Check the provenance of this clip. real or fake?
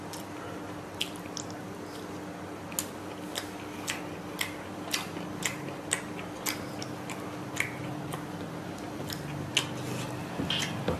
real